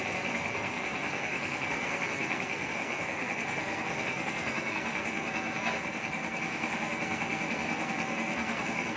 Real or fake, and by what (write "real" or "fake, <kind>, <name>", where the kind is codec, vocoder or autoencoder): fake, codec, SNAC